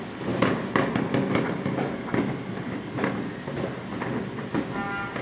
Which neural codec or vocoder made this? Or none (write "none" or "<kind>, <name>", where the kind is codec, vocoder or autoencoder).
none